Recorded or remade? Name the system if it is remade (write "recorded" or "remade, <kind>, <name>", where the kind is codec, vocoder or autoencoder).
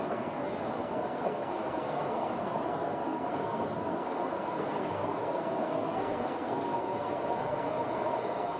remade, codec, SNAC